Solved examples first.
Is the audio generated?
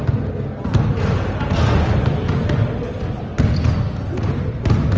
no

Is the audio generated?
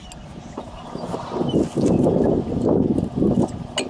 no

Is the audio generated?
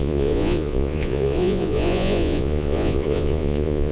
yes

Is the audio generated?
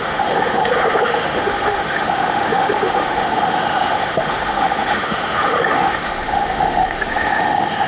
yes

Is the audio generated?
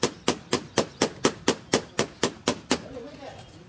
no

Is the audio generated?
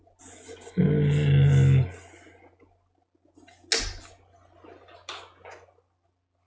no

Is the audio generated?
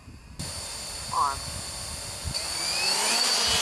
no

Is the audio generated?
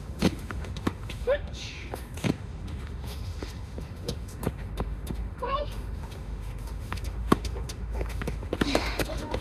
yes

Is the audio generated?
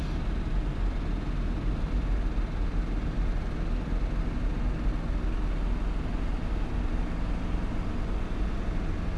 no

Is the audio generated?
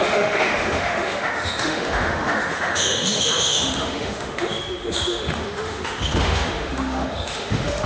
yes